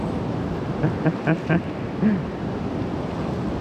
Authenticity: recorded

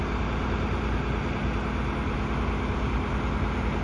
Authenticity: recorded